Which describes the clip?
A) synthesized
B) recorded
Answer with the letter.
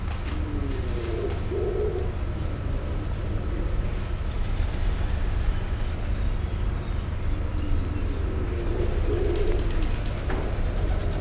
B